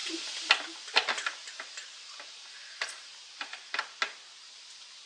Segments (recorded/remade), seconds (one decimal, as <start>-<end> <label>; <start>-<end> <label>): 0.0-0.5 remade; 0.5-1.4 recorded; 1.4-3.8 remade; 3.8-5.1 recorded

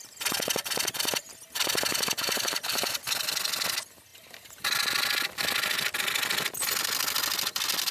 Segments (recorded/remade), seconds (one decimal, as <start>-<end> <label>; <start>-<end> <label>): 0.0-1.9 recorded; 1.9-3.1 remade; 3.1-7.9 recorded